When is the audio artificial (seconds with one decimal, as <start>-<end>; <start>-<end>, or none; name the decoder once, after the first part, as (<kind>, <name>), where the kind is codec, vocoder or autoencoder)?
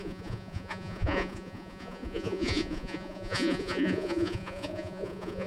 0.0-5.5 (vocoder, Vocos)